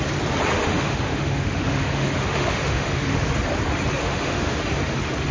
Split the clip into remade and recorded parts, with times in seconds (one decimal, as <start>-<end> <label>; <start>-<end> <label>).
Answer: 0.0-0.5 recorded; 0.5-3.3 remade; 3.3-4.0 recorded; 4.0-4.6 remade; 4.6-5.3 recorded